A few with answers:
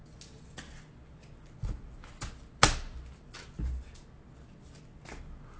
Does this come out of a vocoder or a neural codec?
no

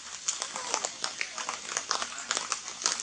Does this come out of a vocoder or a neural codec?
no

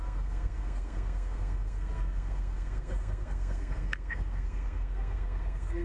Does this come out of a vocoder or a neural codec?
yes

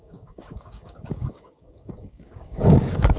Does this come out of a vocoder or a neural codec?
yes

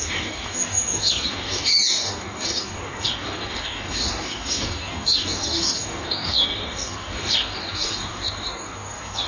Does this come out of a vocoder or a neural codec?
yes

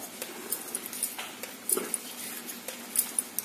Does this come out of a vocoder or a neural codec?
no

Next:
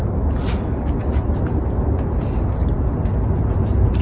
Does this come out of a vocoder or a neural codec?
no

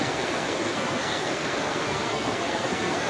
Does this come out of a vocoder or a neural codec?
yes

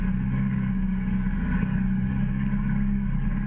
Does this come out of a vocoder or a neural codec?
yes